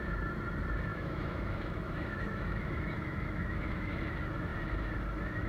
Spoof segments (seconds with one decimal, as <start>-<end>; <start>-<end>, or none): 0.9-4.0